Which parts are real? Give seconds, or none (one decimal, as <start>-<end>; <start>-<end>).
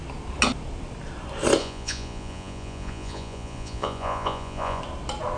0.0-1.6; 4.8-5.4